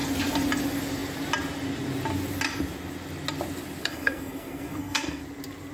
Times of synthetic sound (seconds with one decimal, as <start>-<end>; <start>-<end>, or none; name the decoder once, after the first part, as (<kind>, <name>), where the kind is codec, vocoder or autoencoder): 3.8-5.2 (codec, SNAC)